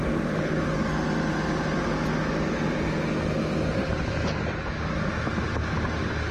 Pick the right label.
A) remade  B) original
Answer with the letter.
B